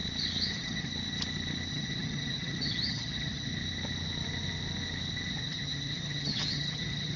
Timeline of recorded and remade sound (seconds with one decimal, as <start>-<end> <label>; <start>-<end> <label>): 0.0-0.5 recorded; 0.5-0.9 remade; 0.9-1.7 recorded; 1.7-3.5 remade; 3.5-5.3 recorded; 5.3-7.2 remade